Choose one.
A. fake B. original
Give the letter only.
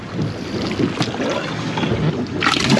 B